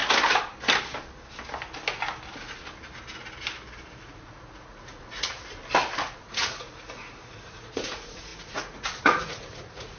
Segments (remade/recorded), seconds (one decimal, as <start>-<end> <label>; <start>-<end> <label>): 0.0-4.0 recorded; 4.0-5.6 remade; 5.6-6.2 recorded; 6.2-10.0 remade